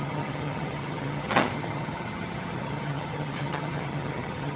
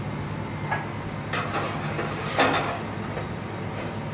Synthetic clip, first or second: first